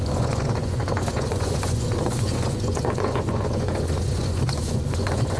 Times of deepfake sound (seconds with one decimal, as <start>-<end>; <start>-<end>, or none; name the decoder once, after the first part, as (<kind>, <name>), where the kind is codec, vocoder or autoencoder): 0.0-5.4 (vocoder, Vocos)